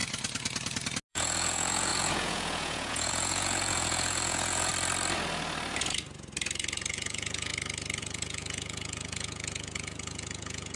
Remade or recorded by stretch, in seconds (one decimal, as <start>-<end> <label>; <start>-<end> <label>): 0.0-1.1 recorded; 1.1-4.7 remade; 4.7-6.9 recorded; 6.9-7.5 remade; 7.5-8.0 recorded; 8.0-10.8 remade

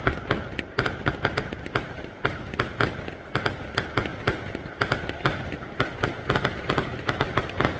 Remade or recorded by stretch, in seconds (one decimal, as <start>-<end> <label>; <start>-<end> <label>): 0.0-7.8 recorded

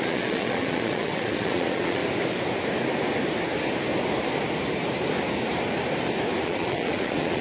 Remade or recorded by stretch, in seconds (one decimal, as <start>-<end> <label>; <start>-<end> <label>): 0.0-2.0 remade; 2.0-6.4 recorded; 6.4-7.4 remade

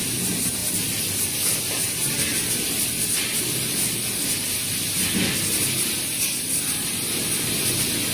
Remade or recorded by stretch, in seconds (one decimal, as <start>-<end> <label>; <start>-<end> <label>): 0.0-8.1 recorded